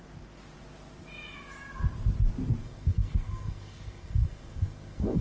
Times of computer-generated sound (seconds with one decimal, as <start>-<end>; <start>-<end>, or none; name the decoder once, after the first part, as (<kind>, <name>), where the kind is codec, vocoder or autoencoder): 2.6-5.2 (codec, SNAC)